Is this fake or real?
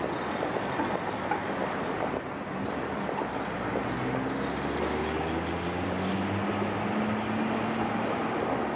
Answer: real